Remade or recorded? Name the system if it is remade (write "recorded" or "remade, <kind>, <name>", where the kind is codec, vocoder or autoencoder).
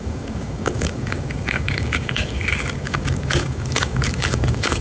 remade, codec, DAC